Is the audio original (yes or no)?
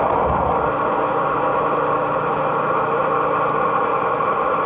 yes